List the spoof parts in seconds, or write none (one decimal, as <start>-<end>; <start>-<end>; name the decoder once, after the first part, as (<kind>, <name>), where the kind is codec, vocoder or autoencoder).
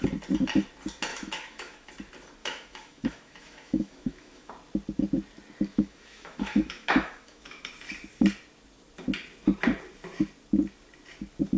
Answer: 1.1-1.9 (autoencoder, DAC-VAE); 2.4-4.5; 5.7-7.7